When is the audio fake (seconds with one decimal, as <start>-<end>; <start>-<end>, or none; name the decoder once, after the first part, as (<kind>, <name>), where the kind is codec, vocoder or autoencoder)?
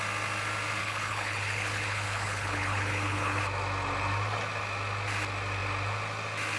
0.8-3.4 (codec, HILCodec)